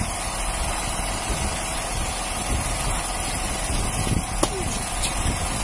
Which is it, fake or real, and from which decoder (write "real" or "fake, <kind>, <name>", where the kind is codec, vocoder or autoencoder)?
real